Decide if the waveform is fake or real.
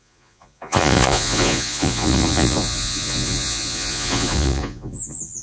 fake